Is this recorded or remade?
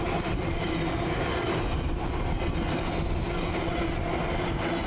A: recorded